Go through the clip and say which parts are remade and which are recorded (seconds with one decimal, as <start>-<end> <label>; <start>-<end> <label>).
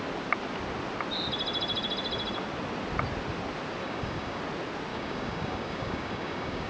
0.0-3.8 recorded; 3.8-4.4 remade; 4.4-4.9 recorded; 4.9-6.7 remade